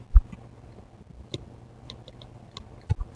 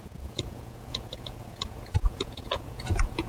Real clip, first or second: first